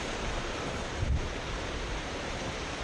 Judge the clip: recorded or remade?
remade